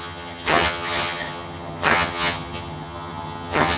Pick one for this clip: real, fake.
fake